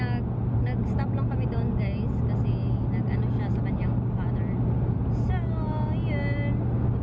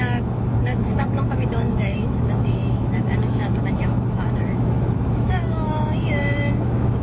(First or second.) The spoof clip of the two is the second